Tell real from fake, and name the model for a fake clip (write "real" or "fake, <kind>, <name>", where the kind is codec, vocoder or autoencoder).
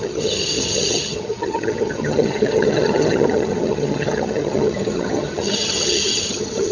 fake, vocoder, HiFi-GAN